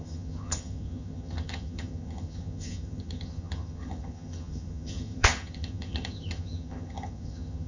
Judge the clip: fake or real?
fake